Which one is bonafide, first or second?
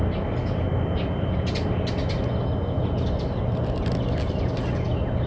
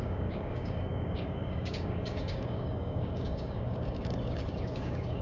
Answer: first